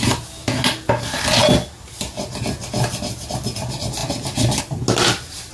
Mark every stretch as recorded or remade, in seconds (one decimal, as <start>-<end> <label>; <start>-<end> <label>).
0.0-5.5 recorded